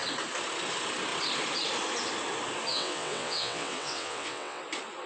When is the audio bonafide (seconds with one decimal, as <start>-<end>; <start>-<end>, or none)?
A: 0.0-2.7; 4.6-5.1